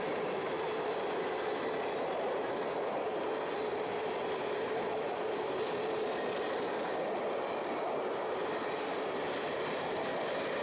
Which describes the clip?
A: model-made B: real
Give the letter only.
B